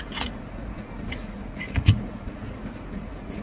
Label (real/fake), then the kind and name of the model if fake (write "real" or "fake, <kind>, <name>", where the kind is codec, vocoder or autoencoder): fake, vocoder, Vocos